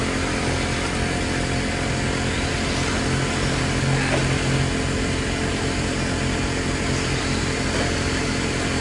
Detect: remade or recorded recorded